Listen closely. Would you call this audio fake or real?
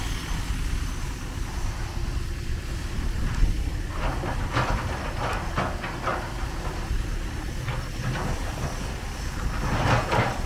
real